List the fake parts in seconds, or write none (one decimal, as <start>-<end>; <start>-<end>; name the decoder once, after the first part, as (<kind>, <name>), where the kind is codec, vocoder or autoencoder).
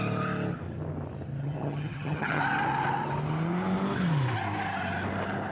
1.4-2.4 (vocoder, HiFi-GAN)